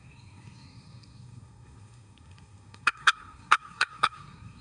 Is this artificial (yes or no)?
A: yes